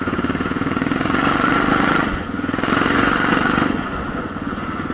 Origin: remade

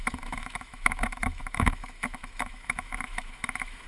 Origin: remade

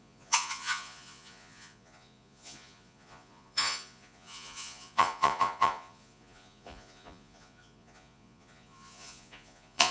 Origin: remade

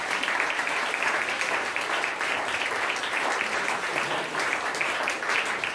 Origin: remade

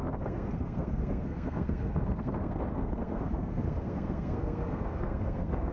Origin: remade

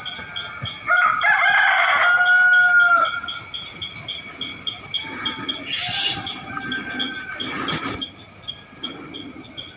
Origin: recorded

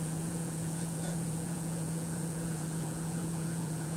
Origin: remade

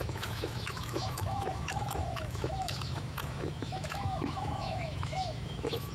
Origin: remade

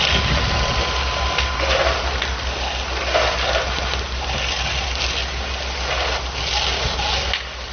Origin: recorded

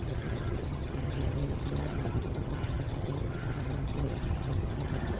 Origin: remade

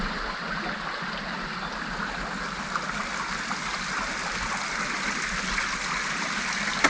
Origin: recorded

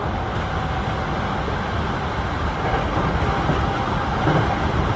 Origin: recorded